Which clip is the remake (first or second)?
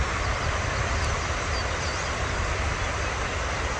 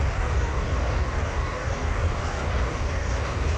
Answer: second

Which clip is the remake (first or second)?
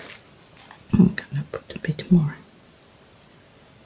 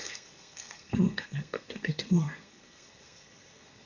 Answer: second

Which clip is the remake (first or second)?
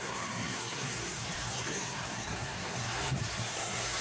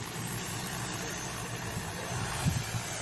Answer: first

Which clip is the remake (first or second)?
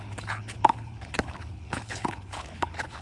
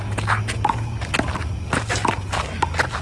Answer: first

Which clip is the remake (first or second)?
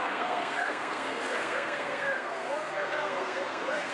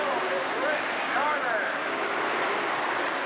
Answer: first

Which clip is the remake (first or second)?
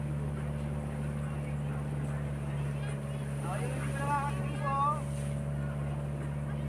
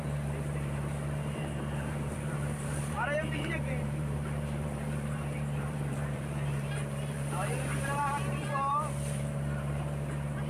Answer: second